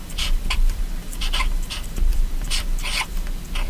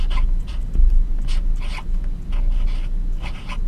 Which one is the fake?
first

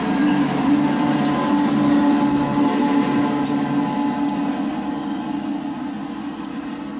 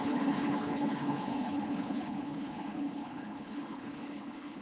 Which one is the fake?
second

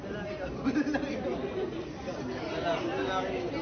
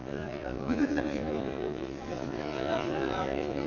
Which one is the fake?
second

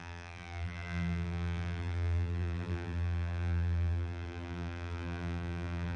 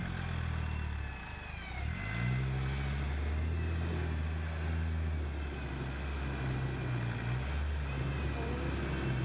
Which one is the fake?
first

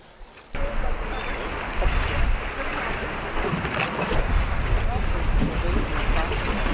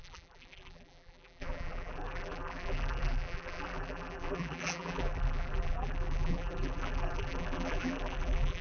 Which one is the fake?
second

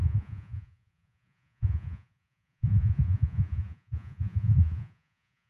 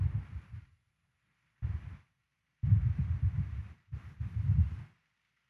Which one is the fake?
first